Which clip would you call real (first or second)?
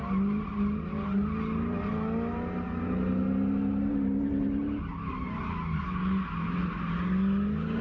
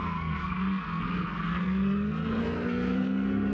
first